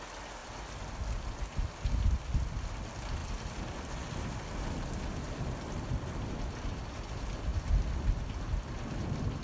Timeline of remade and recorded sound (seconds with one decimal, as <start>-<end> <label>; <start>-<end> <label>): 0.0-0.4 recorded; 0.4-0.9 remade; 0.9-3.2 recorded; 3.2-6.3 remade; 6.3-7.5 recorded; 7.5-8.8 remade; 8.8-9.4 recorded